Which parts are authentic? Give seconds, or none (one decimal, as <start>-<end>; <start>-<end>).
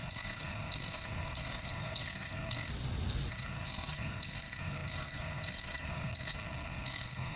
2.7-3.3